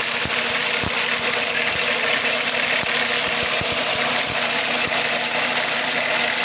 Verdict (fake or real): real